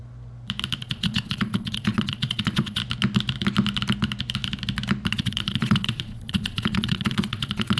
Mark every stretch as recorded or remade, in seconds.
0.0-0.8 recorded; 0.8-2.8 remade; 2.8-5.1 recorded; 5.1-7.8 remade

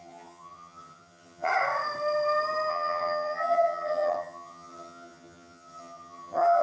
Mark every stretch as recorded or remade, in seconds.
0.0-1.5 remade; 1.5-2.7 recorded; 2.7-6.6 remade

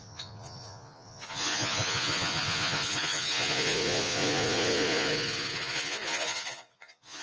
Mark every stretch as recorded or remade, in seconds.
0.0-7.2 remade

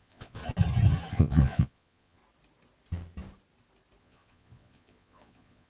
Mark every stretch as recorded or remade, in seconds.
0.0-0.4 remade; 0.4-1.1 recorded; 1.1-2.2 remade; 2.2-4.0 recorded; 4.0-5.7 remade

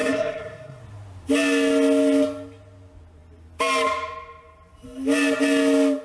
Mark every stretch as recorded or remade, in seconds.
0.0-0.8 remade; 0.8-6.0 recorded

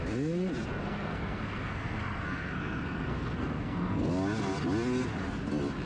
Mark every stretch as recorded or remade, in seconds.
0.0-0.8 recorded; 0.8-4.1 remade; 4.1-5.9 recorded

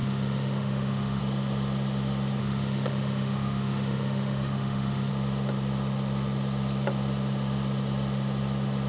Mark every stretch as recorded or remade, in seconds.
0.0-1.2 remade; 1.2-2.4 recorded; 2.4-5.1 remade; 5.1-8.9 recorded